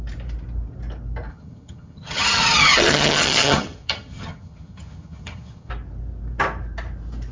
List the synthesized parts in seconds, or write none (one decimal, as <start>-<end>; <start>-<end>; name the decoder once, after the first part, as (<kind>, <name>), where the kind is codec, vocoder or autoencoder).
1.3-5.7 (vocoder, HiFi-GAN)